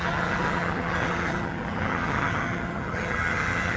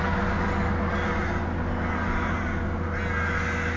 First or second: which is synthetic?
first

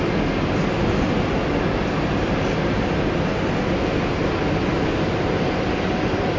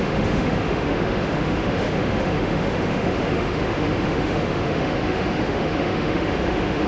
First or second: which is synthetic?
second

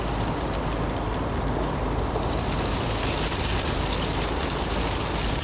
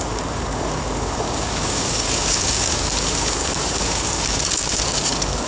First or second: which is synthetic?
second